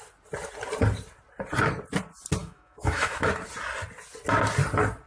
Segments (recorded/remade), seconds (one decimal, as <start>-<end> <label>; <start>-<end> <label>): 0.0-2.4 recorded; 2.4-3.3 remade; 3.3-5.1 recorded